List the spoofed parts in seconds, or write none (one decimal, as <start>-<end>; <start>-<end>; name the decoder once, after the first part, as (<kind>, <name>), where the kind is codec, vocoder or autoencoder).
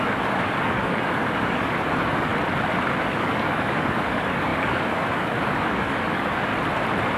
0.0-2.3 (codec, DAC); 3.0-6.5